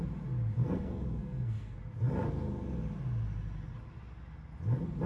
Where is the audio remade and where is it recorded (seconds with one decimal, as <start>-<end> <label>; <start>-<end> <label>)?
0.0-0.6 recorded; 0.6-1.8 remade; 1.8-5.1 recorded